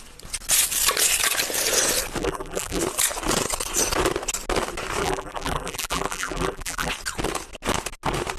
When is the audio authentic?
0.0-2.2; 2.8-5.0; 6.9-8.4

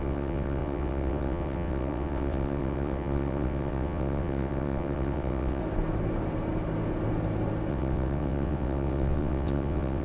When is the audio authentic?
5.6-7.7

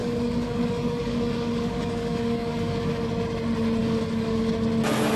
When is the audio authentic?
3.1-3.8; 4.5-5.2

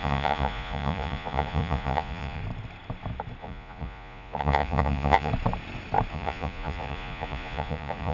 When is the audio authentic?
2.4-3.4; 5.3-6.1

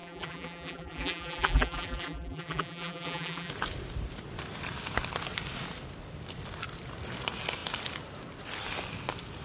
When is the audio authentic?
3.5-9.4

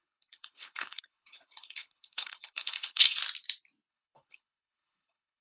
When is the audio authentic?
3.2-3.9